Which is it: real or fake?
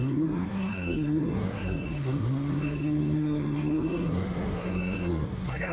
fake